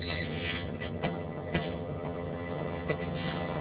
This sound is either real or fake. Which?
fake